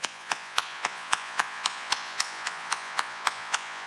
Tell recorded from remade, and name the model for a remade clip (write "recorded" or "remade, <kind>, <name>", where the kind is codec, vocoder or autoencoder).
remade, vocoder, Vocos